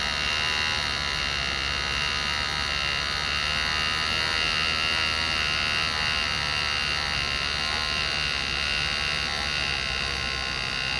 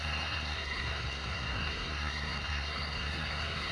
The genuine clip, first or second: first